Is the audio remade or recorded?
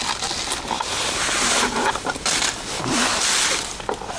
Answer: recorded